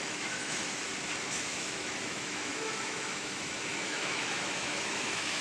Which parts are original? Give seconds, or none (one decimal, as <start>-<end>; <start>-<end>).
0.6-1.2